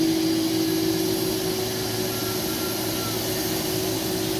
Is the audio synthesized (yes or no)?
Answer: no